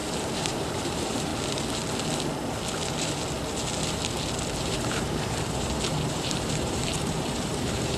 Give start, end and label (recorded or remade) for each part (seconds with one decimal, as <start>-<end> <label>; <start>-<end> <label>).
0.0-1.3 remade; 1.3-4.6 recorded; 4.6-8.0 remade